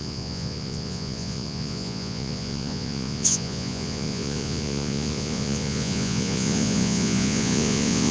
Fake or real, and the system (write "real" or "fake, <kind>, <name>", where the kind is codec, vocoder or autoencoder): fake, vocoder, Vocos